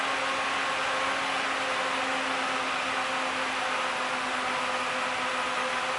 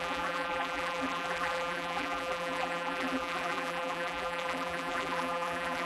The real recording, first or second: first